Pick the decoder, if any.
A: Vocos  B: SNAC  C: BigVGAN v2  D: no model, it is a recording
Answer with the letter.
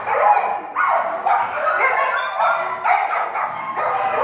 D